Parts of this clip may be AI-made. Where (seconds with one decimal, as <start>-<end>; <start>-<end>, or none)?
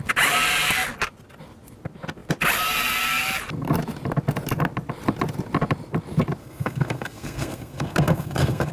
6.4-8.7